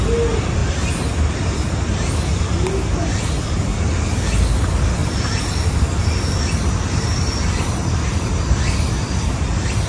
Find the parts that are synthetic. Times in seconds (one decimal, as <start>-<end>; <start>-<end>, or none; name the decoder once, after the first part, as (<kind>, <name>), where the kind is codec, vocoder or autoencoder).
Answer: 5.0-8.3 (vocoder, BigVGAN v2)